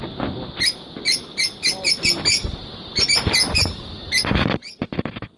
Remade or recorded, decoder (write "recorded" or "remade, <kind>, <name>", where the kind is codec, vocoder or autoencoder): recorded